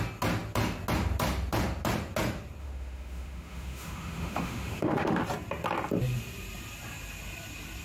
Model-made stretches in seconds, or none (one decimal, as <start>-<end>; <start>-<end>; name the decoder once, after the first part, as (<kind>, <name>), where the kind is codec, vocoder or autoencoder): 2.6-5.2 (autoencoder, DAC-VAE)